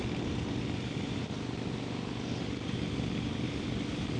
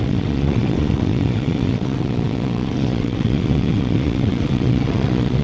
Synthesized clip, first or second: second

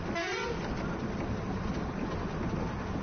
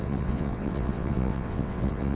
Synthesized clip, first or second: second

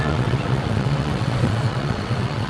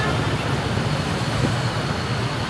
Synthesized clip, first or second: first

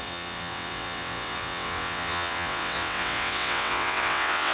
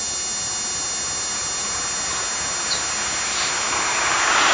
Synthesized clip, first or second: first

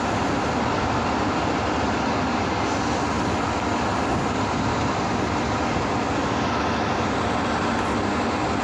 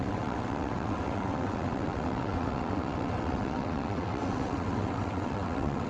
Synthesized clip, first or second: second